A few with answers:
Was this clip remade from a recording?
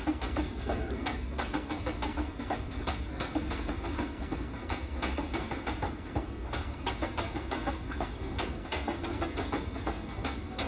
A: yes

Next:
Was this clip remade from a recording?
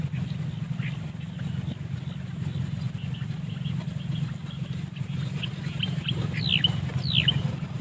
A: no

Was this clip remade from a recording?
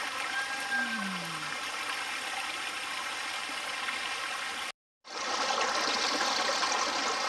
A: no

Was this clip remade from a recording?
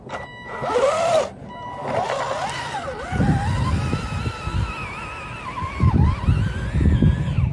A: no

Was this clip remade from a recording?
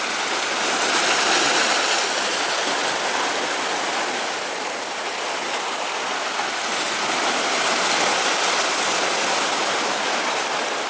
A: no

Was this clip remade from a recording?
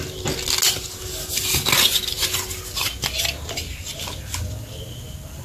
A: no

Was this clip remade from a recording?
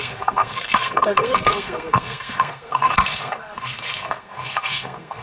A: yes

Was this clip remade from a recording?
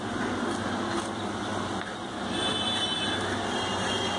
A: no